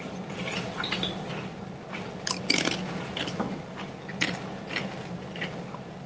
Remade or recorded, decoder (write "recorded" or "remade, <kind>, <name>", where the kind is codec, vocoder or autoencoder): recorded